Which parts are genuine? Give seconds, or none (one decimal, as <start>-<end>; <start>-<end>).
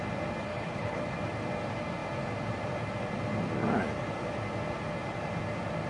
0.0-0.5; 1.0-5.9